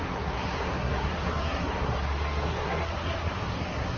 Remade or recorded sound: remade